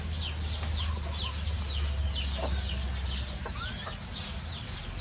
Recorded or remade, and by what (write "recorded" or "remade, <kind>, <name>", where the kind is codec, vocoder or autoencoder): recorded